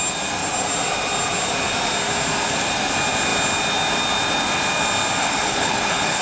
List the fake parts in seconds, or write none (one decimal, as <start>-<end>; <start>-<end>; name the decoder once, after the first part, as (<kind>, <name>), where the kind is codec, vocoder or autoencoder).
5.2-6.2 (codec, HILCodec)